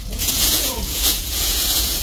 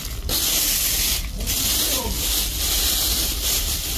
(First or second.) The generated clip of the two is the first